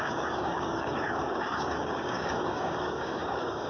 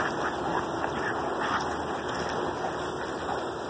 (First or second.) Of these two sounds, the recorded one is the second